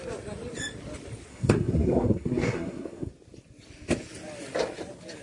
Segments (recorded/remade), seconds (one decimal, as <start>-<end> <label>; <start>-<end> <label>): 0.0-1.3 recorded; 1.3-3.1 remade; 3.1-5.2 recorded